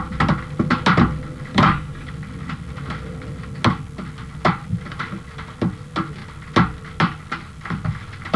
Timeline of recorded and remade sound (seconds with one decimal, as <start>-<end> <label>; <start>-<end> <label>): 0.0-1.5 recorded; 1.5-2.1 remade; 2.1-8.4 recorded